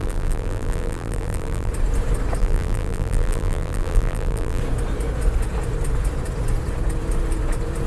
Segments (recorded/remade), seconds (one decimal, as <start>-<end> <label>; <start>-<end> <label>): 0.0-1.7 remade; 1.7-2.4 recorded; 2.4-4.6 remade; 4.6-7.9 recorded